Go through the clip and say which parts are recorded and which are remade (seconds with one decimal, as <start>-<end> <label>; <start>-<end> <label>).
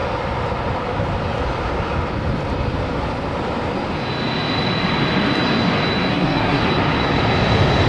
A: 0.0-6.1 recorded; 6.1-6.6 remade; 6.6-7.9 recorded